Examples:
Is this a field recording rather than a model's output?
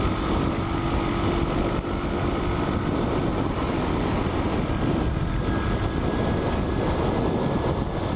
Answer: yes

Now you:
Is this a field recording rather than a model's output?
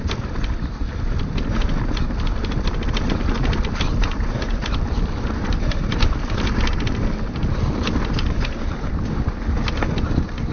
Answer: yes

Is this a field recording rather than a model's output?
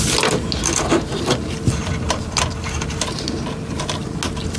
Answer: yes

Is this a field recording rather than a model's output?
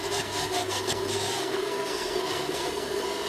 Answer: no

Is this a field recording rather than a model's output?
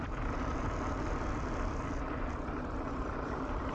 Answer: yes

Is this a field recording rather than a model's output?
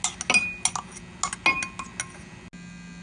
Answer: yes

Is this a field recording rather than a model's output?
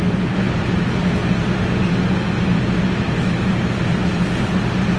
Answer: yes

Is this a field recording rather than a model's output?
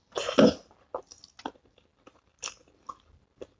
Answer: yes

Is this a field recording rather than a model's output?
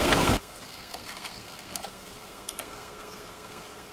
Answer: no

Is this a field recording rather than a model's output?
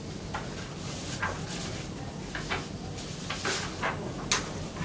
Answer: yes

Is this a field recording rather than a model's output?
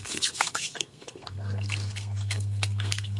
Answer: no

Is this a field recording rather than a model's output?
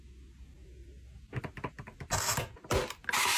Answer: yes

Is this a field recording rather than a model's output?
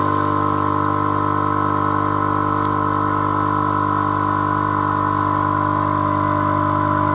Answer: yes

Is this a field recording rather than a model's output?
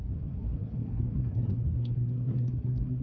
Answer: no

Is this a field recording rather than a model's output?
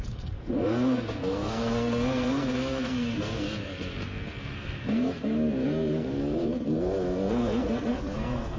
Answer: no